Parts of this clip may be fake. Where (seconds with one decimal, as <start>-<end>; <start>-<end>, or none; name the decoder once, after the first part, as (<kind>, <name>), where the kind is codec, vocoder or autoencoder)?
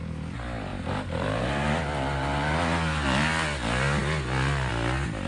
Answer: 0.7-1.4 (vocoder, BigVGAN v2)